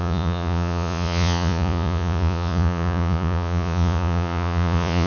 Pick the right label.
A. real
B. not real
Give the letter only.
B